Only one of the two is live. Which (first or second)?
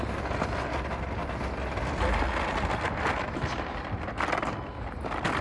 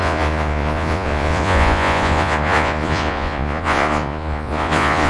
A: first